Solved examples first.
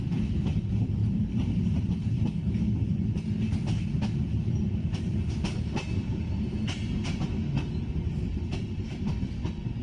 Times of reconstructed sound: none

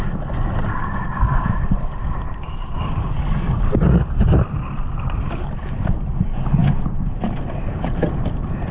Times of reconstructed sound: none

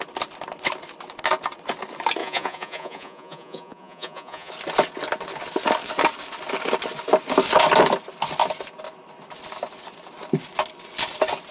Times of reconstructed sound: 2.2-4.5 (vocoder, Vocos)

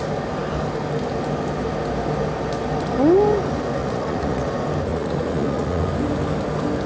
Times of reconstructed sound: 3.8-4.5 (vocoder, Vocos); 4.9-5.9